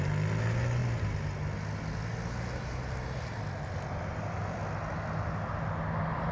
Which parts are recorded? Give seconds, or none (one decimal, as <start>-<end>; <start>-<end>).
0.0-6.3